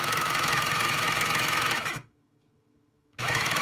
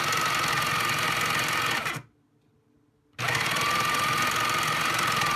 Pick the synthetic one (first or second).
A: first